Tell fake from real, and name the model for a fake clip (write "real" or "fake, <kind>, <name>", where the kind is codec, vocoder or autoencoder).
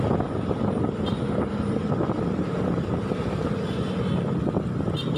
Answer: fake, vocoder, BigVGAN v2